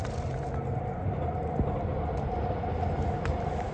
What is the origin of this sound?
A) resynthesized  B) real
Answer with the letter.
B